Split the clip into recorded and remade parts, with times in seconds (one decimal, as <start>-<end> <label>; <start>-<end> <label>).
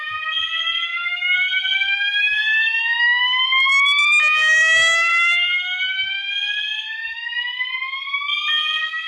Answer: 0.0-9.1 recorded